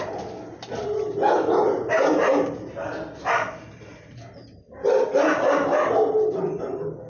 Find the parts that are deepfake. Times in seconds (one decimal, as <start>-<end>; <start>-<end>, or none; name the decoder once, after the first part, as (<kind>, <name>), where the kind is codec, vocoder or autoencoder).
none